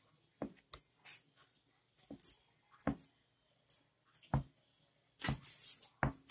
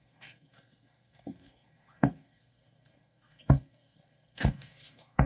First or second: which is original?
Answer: first